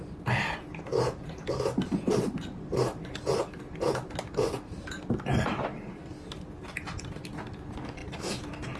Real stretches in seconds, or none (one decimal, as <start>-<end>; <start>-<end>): 0.0-8.8